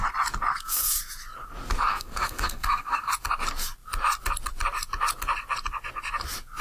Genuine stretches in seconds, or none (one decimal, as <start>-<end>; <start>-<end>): 0.0-0.5; 1.0-1.9; 3.1-6.6